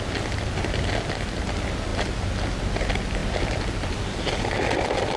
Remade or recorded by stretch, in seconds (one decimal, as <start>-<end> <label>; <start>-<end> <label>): 0.0-5.2 recorded